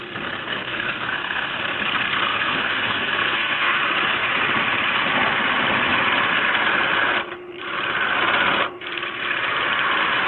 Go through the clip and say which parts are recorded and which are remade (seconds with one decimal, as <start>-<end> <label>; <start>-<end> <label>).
0.0-0.4 recorded; 0.4-1.6 remade; 1.6-2.3 recorded; 2.3-3.8 remade; 3.8-10.3 recorded